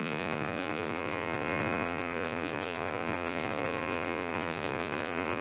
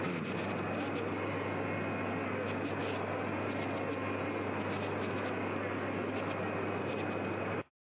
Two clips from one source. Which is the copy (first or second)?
first